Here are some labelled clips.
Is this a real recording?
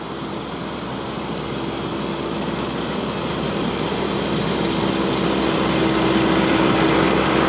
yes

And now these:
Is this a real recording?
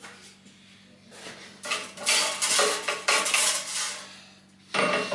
yes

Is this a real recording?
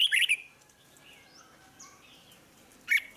yes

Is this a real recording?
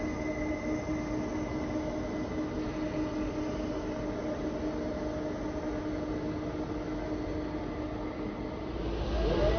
yes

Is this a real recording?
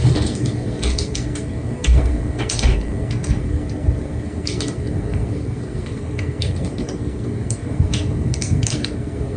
no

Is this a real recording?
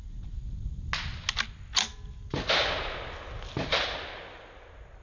yes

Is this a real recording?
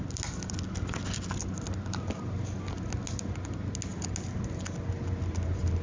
yes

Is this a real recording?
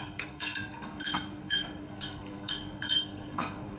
no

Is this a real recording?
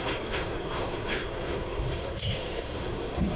no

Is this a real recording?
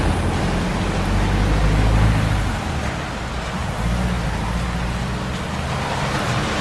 yes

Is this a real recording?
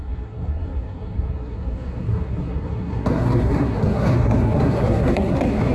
no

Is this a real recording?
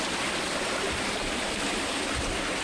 yes